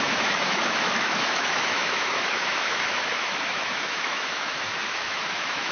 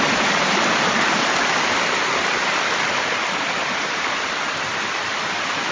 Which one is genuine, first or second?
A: second